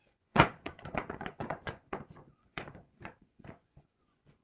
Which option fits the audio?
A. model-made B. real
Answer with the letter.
A